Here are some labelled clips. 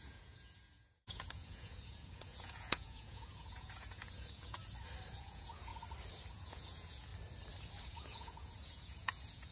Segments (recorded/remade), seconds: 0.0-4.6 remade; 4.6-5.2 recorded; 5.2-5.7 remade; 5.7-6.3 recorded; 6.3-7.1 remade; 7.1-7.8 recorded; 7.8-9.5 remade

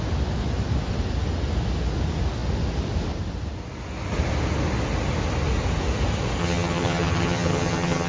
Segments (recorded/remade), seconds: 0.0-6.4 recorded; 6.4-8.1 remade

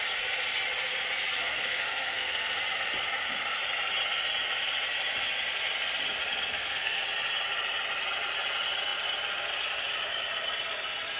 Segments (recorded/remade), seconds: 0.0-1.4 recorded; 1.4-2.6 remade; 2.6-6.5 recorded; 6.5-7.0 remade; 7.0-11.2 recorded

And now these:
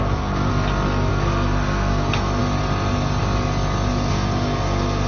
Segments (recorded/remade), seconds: 0.0-0.5 remade; 0.5-1.1 recorded; 1.1-2.4 remade; 2.4-4.1 recorded; 4.1-5.1 remade

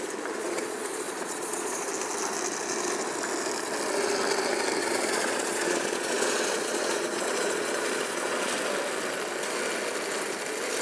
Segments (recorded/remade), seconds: 0.0-0.4 recorded; 0.4-1.9 remade; 1.9-4.8 recorded; 4.8-8.5 remade; 8.5-10.8 recorded

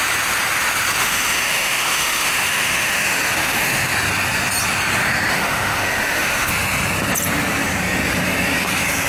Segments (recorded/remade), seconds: 0.0-1.0 recorded; 1.0-3.9 remade; 3.9-5.3 recorded; 5.3-6.5 remade; 6.5-9.1 recorded

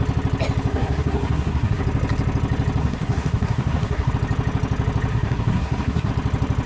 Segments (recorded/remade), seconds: 0.0-0.7 recorded; 0.7-1.8 remade; 1.8-2.8 recorded; 2.8-4.1 remade; 4.1-5.1 recorded; 5.1-6.1 remade; 6.1-6.7 recorded